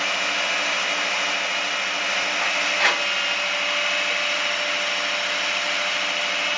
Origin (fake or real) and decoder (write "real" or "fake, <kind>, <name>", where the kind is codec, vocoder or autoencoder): real